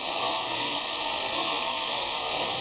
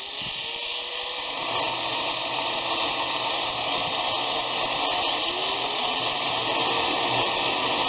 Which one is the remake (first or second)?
first